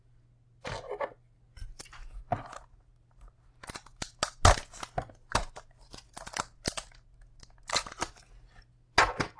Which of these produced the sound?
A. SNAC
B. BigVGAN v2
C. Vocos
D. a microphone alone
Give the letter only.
D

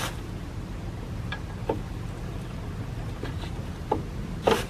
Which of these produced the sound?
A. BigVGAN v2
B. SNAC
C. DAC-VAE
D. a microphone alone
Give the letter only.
A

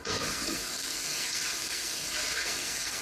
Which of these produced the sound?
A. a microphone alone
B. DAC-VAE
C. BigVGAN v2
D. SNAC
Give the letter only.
D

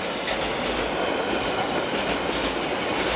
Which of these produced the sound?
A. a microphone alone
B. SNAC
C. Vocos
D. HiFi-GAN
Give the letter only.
A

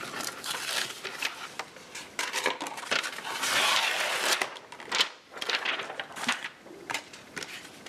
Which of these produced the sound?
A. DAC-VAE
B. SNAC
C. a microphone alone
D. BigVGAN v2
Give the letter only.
C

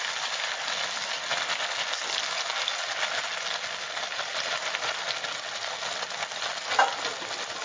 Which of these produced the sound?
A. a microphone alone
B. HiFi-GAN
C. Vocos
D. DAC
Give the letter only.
A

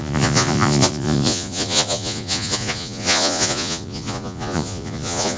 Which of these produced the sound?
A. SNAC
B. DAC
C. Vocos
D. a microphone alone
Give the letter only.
C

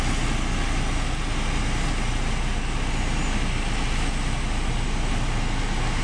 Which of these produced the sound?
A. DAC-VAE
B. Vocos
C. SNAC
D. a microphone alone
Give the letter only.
D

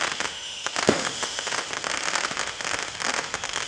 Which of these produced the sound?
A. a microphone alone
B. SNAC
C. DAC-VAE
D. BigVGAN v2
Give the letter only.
C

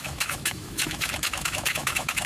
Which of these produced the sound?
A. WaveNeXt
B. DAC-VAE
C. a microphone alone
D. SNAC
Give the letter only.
B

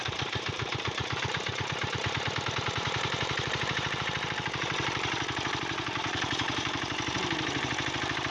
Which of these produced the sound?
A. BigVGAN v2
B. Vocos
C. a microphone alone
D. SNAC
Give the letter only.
A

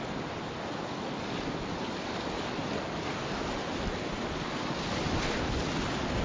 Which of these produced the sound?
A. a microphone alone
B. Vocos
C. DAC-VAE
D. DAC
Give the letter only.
A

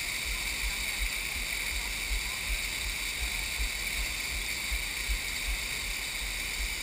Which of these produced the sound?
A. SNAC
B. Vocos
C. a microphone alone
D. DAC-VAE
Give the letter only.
C